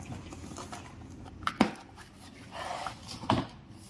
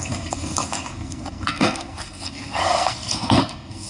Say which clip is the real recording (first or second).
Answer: first